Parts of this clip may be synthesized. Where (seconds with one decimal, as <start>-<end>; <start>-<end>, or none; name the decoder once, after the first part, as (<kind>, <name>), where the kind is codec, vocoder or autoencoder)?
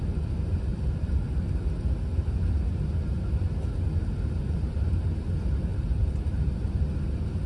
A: 0.7-1.4 (vocoder, BigVGAN v2); 4.4-4.9; 5.7-6.6